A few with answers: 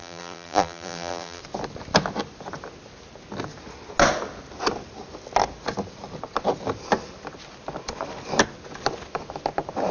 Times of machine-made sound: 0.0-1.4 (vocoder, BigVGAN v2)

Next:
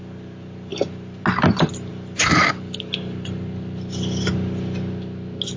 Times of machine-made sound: none

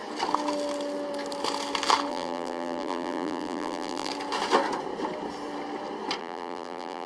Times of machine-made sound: 2.1-4.1 (vocoder, BigVGAN v2); 6.2-7.1

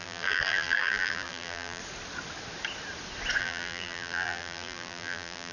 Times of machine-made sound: 0.0-1.8 (vocoder, BigVGAN v2); 3.4-5.5

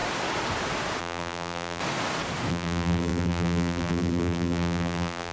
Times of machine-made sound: 1.0-1.8 (vocoder, BigVGAN v2); 2.5-5.3

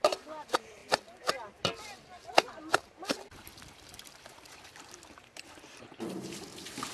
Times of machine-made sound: 0.0-6.9 (vocoder, BigVGAN v2)

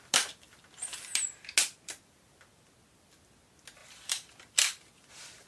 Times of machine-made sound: 3.8-5.5 (vocoder, BigVGAN v2)

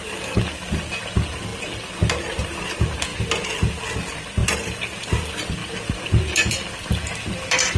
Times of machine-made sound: 4.4-5.1 (vocoder, BigVGAN v2)